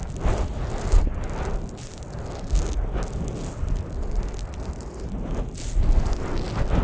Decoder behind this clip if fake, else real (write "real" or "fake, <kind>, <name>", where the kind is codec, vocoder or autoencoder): real